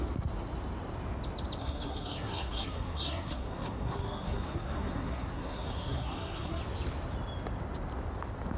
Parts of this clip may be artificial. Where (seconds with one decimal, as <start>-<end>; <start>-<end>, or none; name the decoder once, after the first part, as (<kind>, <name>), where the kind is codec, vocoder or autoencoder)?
1.6-6.6 (codec, SNAC)